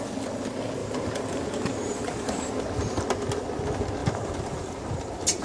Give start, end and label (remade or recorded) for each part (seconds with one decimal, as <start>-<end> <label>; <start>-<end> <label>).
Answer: 0.0-0.8 recorded; 0.8-2.5 remade; 2.5-4.0 recorded; 4.0-4.7 remade; 4.7-5.4 recorded